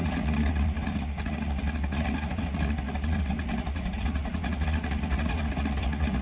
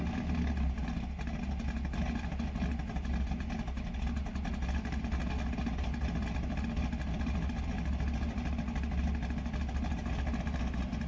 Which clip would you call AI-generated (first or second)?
first